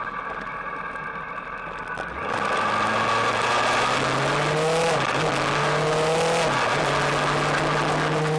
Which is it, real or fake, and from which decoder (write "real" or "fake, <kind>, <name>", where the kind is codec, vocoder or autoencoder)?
real